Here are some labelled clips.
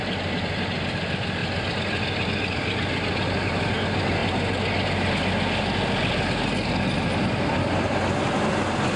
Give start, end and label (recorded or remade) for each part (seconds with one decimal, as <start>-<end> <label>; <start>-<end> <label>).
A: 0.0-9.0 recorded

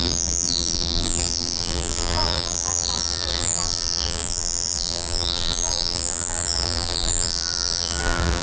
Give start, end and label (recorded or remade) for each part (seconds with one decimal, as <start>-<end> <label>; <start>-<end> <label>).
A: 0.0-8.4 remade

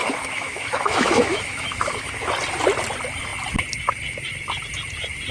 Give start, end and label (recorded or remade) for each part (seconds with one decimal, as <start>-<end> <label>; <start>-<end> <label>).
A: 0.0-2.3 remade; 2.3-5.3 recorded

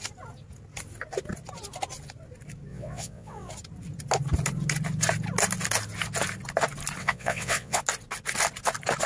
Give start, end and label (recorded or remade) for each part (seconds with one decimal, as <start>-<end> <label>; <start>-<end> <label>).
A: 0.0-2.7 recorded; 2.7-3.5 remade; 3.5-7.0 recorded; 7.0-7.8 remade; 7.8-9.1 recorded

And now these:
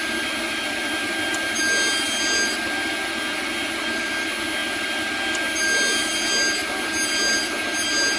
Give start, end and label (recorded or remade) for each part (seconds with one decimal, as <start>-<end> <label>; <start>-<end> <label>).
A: 0.0-8.2 recorded

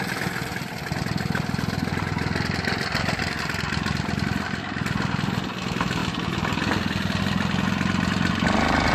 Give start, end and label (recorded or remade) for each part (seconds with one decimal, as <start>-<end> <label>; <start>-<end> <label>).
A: 0.0-8.9 recorded

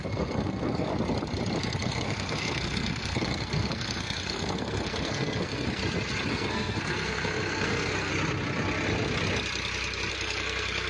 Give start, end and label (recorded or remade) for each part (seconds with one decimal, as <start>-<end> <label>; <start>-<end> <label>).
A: 0.0-0.9 remade; 0.9-1.6 recorded; 1.6-5.8 remade; 5.8-6.3 recorded; 6.3-8.1 remade; 8.1-10.1 recorded; 10.1-10.9 remade

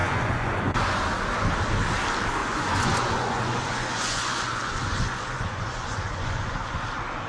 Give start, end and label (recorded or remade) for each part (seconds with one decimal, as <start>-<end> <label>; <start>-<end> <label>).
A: 0.0-1.0 remade; 1.0-2.4 recorded; 2.4-6.8 remade; 6.8-7.3 recorded